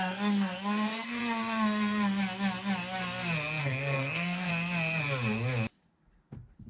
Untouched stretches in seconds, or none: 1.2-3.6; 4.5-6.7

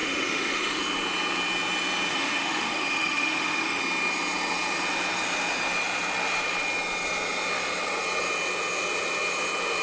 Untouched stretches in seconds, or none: 0.8-2.1; 3.8-9.8

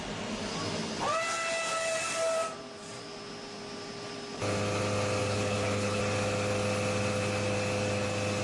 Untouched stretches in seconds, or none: 0.0-5.2; 6.0-8.4

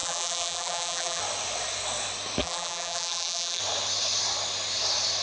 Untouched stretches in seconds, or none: 1.2-2.4; 3.6-5.2

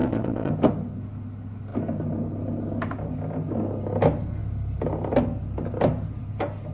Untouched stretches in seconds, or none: 0.5-6.7